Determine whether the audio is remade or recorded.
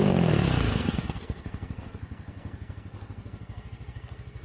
remade